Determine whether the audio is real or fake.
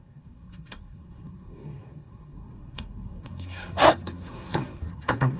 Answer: fake